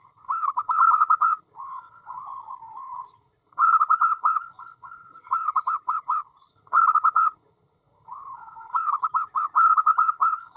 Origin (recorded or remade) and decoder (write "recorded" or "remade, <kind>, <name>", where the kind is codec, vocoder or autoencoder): remade, codec, HILCodec